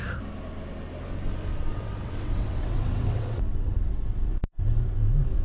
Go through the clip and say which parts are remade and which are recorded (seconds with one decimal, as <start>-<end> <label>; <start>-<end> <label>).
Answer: 0.0-1.5 recorded; 1.5-4.3 remade; 4.3-5.4 recorded